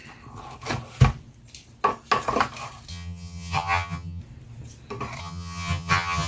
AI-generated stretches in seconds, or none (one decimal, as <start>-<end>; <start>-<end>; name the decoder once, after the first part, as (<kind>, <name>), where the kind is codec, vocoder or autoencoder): 2.9-4.2 (vocoder, HiFi-GAN); 5.2-6.3